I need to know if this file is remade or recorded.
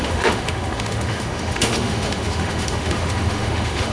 remade